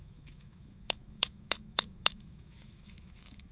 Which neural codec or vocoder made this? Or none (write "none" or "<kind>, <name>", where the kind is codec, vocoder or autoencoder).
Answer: autoencoder, DAC-VAE